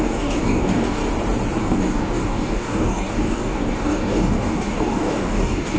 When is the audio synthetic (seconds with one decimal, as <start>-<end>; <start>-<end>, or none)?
0.0-1.0; 1.6-5.8